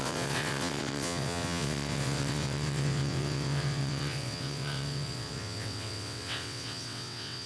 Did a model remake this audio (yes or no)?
yes